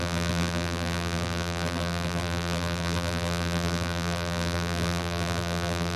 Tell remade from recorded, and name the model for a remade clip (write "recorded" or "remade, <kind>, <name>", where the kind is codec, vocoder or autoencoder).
remade, vocoder, BigVGAN v2